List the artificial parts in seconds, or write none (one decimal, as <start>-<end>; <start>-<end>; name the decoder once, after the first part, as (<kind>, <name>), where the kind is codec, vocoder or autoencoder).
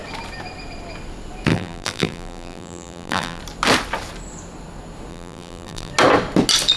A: 1.5-3.4 (vocoder, BigVGAN v2); 5.1-5.9